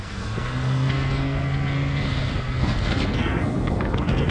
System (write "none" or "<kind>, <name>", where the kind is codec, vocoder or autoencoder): codec, SNAC